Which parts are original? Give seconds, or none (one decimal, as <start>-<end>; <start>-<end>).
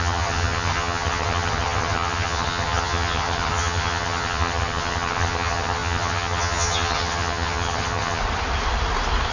8.2-9.3